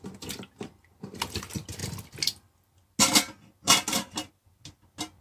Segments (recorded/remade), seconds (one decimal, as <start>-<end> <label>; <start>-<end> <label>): 0.0-5.2 recorded

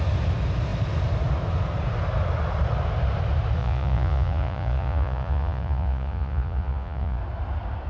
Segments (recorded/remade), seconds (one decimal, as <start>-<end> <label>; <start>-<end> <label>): 0.0-3.6 recorded; 3.6-7.2 remade; 7.2-7.9 recorded